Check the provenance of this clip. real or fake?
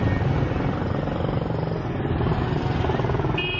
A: real